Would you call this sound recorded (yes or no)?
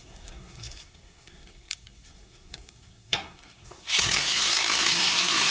no